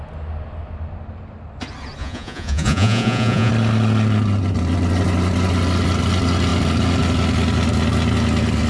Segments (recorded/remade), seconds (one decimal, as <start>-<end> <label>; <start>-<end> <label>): 0.0-2.0 recorded; 2.0-3.5 remade; 3.5-8.7 recorded